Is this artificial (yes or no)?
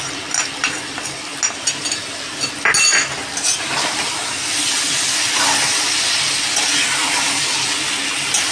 no